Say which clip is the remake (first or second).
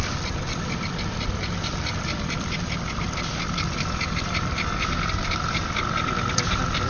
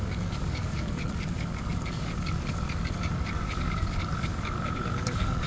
second